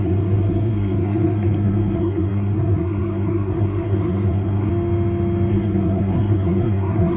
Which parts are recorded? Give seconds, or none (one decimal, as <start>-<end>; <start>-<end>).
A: 4.7-5.5